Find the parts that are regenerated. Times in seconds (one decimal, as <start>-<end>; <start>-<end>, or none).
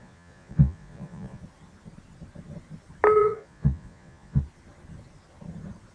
0.0-1.4; 3.2-4.4